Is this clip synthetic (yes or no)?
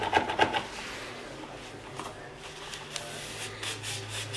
no